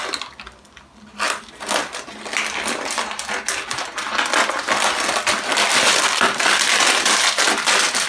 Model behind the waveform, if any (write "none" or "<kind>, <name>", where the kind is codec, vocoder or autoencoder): none